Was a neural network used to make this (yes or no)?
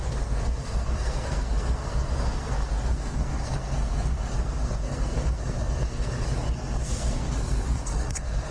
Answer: yes